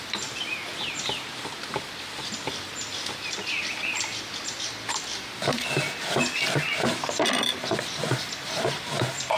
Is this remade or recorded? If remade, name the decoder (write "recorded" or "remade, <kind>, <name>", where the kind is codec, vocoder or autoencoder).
remade, vocoder, BigVGAN v2